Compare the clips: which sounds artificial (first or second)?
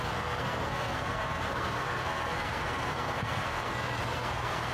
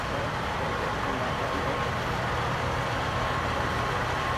first